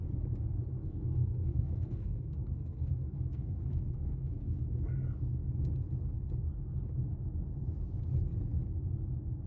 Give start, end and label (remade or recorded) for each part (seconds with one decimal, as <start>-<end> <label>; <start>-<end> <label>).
0.0-0.8 recorded; 0.8-4.6 remade; 4.6-9.5 recorded